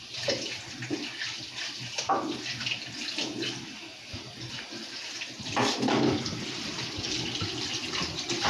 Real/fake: real